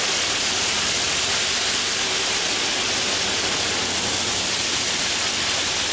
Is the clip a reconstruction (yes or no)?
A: no